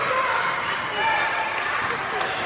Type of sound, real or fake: real